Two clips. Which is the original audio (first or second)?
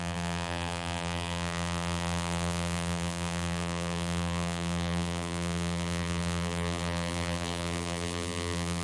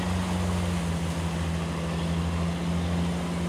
second